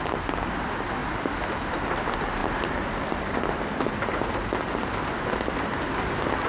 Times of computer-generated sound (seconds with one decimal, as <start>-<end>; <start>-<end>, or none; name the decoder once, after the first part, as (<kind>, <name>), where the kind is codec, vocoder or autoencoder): none

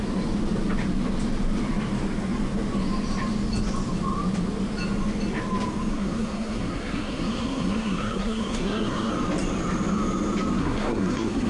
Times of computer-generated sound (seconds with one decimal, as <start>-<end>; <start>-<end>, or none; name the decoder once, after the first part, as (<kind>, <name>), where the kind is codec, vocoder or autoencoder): 5.9-9.1 (codec, SNAC); 10.6-11.5

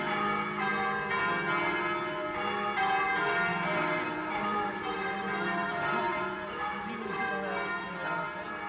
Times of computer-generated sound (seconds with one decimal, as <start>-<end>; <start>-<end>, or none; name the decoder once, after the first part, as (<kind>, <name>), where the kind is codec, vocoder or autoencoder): 3.5-7.3 (vocoder, BigVGAN v2)

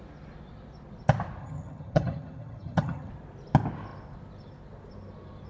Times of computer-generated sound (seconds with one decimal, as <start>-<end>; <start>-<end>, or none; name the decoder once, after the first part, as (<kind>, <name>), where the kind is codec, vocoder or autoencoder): 1.4-3.1 (vocoder, HiFi-GAN)

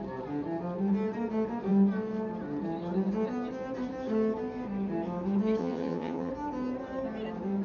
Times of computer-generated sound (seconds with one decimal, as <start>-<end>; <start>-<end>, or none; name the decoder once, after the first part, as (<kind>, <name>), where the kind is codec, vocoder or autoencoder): 5.6-6.3 (vocoder, HiFi-GAN)

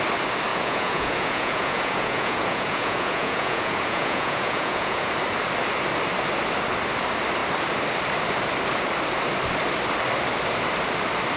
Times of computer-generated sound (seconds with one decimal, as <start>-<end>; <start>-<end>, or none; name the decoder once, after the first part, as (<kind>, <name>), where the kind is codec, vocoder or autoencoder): 0.5-5.1 (vocoder, Vocos)